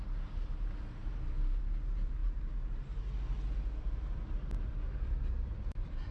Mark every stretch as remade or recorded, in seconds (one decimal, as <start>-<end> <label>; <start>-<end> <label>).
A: 0.0-6.1 recorded